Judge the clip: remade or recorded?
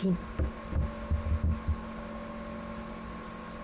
recorded